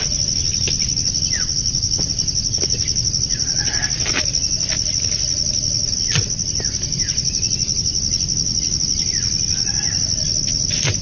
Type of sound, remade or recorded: recorded